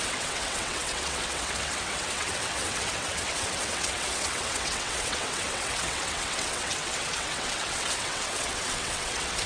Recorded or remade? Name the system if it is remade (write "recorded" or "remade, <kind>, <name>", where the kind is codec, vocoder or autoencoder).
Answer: remade, vocoder, WaveNeXt